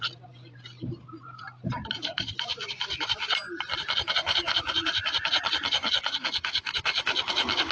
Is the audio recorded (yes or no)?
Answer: yes